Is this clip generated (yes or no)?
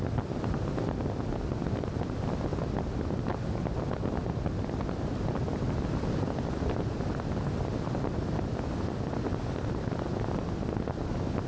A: no